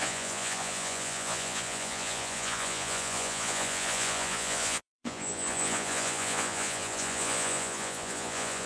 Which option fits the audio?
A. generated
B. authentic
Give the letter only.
A